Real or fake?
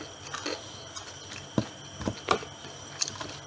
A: real